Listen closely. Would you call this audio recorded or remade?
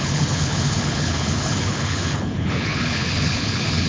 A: remade